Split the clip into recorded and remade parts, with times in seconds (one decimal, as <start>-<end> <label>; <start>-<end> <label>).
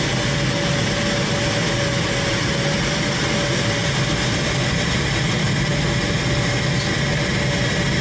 0.0-8.0 recorded